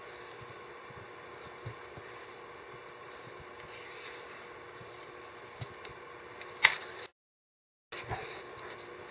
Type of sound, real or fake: real